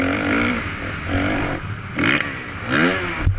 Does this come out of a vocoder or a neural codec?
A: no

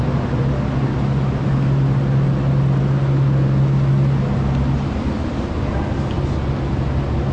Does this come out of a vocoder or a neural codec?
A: no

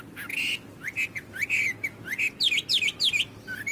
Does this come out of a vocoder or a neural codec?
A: no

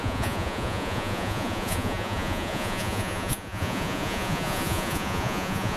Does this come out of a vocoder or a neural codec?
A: yes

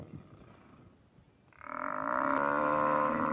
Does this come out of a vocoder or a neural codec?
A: no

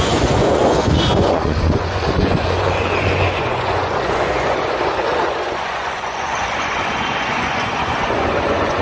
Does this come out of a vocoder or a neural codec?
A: yes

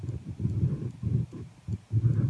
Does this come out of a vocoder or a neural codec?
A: no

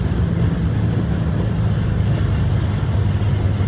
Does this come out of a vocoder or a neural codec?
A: no